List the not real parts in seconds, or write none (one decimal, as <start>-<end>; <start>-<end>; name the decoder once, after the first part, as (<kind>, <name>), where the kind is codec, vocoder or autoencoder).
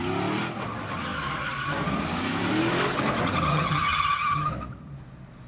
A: 3.5-4.5 (vocoder, HiFi-GAN)